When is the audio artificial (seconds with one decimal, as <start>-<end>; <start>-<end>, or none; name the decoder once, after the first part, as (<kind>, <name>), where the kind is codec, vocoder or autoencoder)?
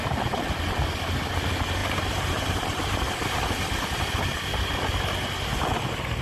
1.8-3.1 (vocoder, BigVGAN v2); 5.5-6.2